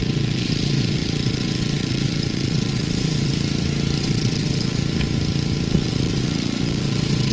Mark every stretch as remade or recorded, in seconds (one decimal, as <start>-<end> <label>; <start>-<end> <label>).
0.0-3.3 remade; 3.3-4.0 recorded; 4.0-4.8 remade; 4.8-5.7 recorded; 5.7-7.3 remade